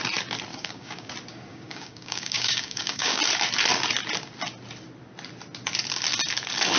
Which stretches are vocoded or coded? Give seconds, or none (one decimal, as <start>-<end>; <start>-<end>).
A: 0.5-1.1; 1.5-3.2